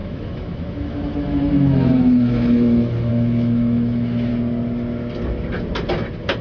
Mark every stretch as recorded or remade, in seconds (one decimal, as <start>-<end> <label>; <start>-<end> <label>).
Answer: 0.0-4.3 remade; 4.3-6.4 recorded